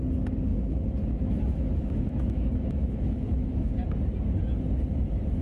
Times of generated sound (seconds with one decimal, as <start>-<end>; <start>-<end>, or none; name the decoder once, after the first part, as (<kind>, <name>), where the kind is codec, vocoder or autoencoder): 0.5-3.7 (autoencoder, DAC-VAE)